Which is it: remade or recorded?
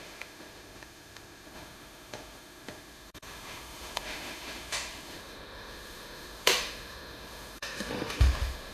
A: remade